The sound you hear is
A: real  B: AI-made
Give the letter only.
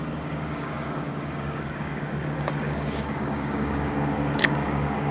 B